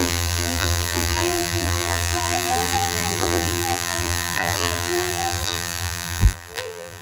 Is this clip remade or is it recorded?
remade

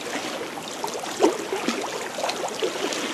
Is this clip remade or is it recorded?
recorded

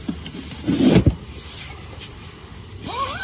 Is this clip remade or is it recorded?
remade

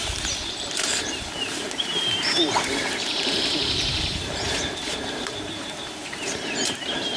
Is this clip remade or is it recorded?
remade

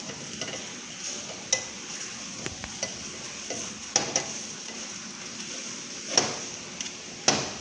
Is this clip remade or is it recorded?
recorded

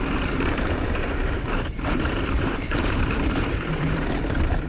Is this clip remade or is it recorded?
remade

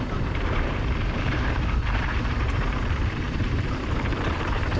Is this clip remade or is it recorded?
remade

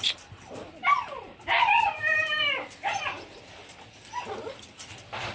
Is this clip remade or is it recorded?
remade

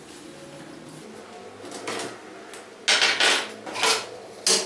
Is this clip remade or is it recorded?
recorded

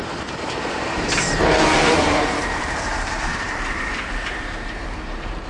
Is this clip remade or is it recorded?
remade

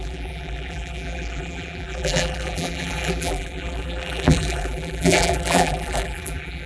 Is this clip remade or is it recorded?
remade